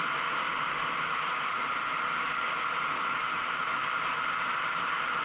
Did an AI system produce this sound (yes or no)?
no